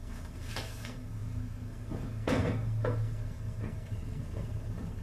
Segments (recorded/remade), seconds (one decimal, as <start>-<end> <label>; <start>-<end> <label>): 0.0-5.0 remade